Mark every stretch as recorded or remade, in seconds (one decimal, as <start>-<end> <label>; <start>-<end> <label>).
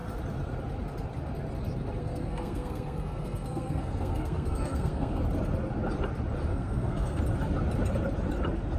0.0-2.0 recorded; 2.0-5.2 remade; 5.2-6.5 recorded; 6.5-7.2 remade; 7.2-8.8 recorded